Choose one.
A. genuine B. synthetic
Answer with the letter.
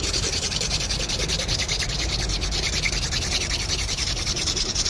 B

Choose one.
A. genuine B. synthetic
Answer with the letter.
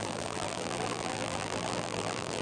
B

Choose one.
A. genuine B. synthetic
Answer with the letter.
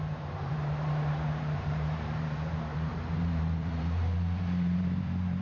B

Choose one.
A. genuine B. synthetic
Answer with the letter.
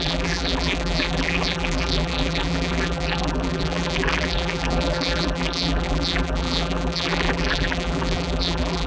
B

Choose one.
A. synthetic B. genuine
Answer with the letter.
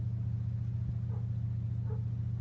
B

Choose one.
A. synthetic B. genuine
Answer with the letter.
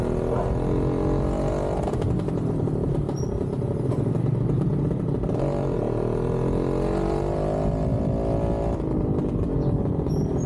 B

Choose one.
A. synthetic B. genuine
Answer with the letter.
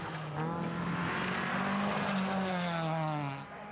B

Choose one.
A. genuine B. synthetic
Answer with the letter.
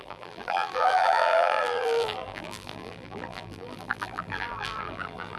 B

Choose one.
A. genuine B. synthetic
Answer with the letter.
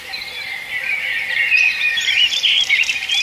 B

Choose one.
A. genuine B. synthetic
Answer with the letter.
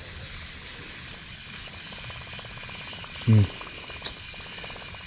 A